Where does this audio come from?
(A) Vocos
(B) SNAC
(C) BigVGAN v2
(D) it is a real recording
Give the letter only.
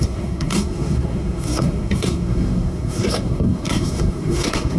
B